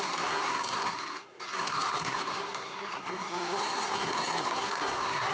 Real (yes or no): no